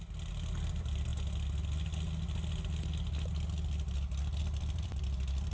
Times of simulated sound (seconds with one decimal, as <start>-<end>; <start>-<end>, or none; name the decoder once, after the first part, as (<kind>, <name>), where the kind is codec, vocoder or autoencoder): 0.0-1.1 (vocoder, BigVGAN v2); 4.4-5.5